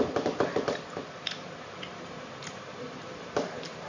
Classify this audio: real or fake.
fake